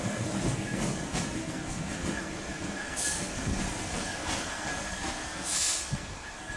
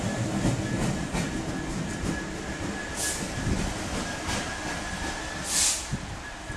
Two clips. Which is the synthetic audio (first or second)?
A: first